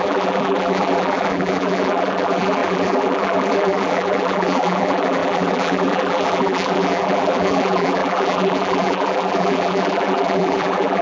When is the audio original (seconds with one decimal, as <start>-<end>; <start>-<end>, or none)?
none